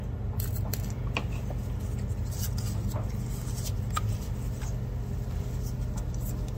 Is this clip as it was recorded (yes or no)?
yes